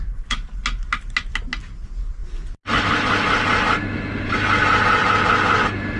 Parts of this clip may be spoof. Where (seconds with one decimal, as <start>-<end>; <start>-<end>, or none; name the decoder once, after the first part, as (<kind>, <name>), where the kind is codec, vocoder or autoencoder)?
none